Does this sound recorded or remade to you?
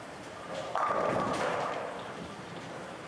remade